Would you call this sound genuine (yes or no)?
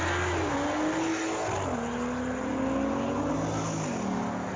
yes